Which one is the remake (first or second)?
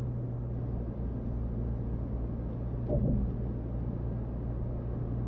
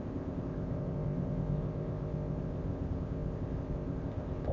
second